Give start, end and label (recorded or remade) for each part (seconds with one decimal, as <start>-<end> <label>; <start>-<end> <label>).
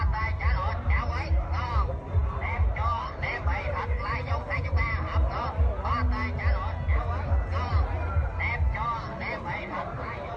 0.0-5.9 remade; 5.9-7.7 recorded; 7.7-8.3 remade; 8.3-9.6 recorded; 9.6-10.4 remade